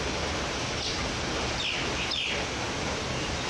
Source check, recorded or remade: recorded